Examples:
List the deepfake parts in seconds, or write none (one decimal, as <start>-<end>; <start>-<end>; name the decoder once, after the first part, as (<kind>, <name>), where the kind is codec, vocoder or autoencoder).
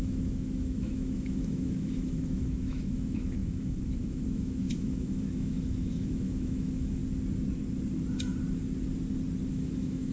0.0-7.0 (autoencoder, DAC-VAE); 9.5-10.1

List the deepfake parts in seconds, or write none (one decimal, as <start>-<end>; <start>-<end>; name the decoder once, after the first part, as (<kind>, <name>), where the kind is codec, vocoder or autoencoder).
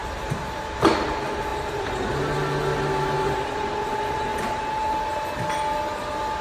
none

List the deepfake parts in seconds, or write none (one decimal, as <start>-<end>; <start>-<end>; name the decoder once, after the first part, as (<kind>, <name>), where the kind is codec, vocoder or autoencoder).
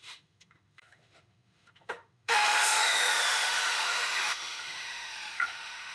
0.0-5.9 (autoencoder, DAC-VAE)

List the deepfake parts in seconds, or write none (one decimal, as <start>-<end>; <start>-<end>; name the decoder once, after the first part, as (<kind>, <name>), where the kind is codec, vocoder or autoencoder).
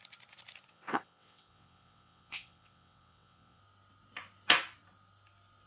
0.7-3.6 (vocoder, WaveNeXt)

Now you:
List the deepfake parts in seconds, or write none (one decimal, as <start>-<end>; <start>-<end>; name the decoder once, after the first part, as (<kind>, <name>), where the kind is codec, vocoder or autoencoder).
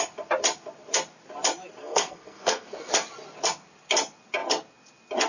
1.8-2.9 (codec, SNAC)